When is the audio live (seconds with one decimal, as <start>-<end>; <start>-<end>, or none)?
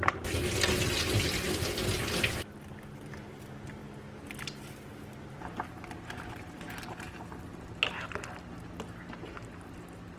0.0-10.2